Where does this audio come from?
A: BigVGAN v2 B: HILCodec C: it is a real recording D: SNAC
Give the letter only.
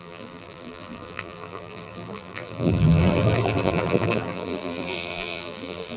A